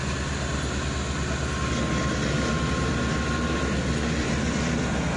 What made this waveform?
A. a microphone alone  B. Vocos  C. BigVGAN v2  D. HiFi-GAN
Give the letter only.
A